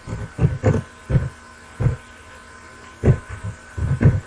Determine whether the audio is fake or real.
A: real